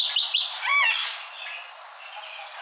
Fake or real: real